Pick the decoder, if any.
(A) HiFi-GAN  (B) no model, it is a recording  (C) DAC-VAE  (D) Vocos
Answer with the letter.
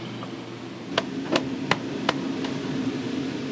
B